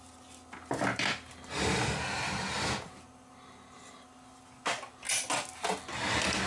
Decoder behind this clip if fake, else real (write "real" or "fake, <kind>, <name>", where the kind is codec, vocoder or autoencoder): real